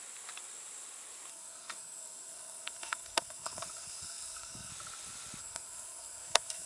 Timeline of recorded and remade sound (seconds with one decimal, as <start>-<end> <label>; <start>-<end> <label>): 0.0-1.3 recorded; 1.3-4.7 remade; 4.7-5.4 recorded; 5.4-6.7 remade